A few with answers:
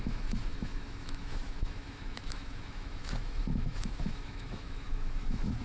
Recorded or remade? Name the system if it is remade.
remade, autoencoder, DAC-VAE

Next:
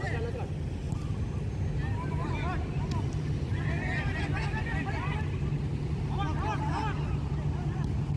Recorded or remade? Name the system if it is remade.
recorded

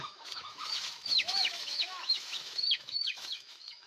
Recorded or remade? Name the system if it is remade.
remade, autoencoder, DAC-VAE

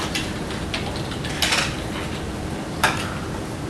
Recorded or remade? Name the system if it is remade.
recorded